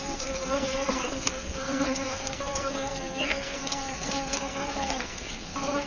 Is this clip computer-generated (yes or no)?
yes